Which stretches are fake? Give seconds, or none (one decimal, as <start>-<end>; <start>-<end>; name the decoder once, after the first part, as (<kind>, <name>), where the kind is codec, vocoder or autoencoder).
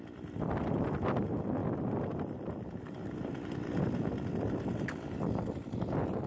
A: 1.6-5.4 (vocoder, BigVGAN v2)